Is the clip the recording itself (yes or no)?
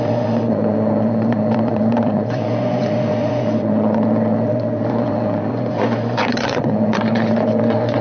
no